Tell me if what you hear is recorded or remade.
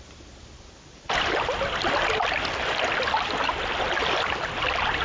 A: recorded